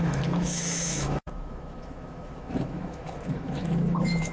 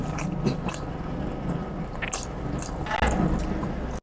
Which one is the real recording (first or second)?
second